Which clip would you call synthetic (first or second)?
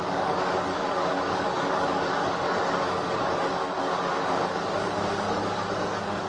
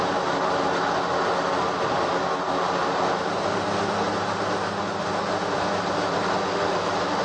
first